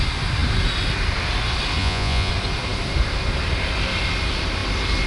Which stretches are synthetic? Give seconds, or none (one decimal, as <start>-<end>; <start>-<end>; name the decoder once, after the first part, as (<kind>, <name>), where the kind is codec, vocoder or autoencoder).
1.8-2.3 (vocoder, Vocos)